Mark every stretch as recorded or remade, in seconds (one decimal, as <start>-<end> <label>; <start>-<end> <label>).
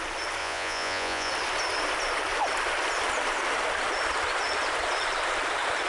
0.0-0.4 recorded; 0.4-1.3 remade; 1.3-5.9 recorded